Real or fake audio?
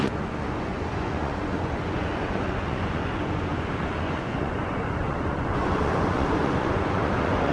fake